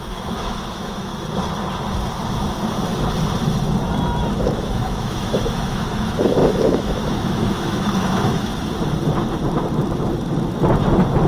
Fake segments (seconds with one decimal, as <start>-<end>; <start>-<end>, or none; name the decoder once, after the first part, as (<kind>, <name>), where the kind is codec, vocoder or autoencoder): 0.0-1.1 (autoencoder, DAC-VAE); 4.4-8.5